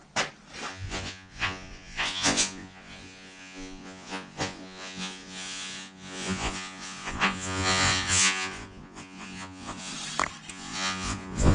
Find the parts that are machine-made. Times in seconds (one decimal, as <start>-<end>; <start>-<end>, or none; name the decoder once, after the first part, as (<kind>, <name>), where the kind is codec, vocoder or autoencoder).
0.7-9.9 (vocoder, Vocos); 10.5-11.5